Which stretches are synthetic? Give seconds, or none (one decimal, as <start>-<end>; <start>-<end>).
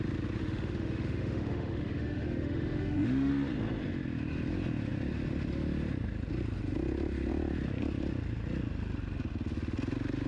0.4-3.3